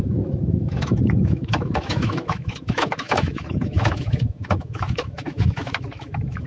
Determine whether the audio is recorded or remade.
remade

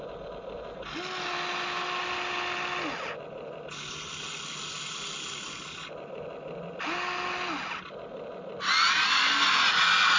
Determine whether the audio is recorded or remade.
recorded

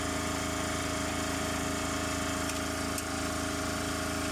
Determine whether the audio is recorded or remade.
recorded